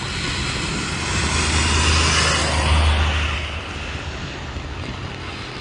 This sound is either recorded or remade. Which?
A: recorded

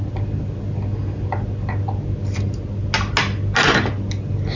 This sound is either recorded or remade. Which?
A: recorded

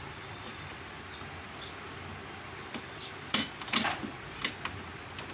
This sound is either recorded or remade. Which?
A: recorded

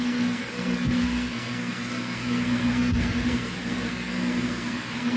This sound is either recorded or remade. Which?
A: remade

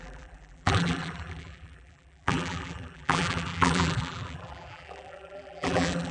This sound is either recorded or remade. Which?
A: remade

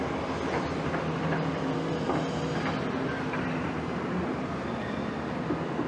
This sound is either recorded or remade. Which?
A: recorded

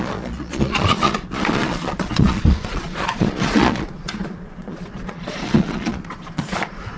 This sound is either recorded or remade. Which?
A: remade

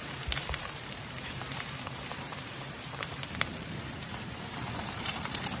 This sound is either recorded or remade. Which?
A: remade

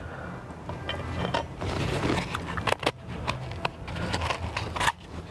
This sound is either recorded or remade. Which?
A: recorded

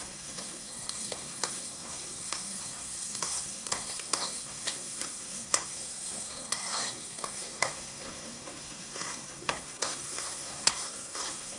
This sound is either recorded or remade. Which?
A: remade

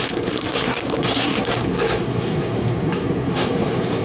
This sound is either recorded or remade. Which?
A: remade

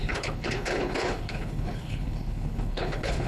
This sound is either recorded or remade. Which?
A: remade